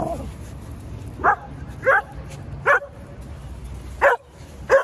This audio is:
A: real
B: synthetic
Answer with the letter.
A